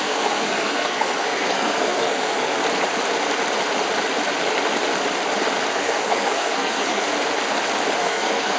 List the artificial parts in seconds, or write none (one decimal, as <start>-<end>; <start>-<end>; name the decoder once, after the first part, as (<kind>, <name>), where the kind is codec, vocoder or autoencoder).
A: 0.0-2.6 (codec, SNAC); 5.7-7.1; 8.0-8.6